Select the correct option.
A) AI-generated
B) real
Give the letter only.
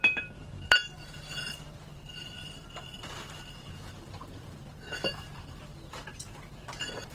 A